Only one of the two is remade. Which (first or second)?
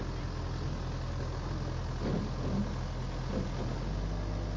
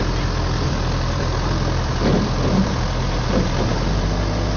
second